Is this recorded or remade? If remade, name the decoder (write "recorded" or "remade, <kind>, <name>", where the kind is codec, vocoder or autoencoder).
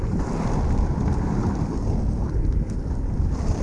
recorded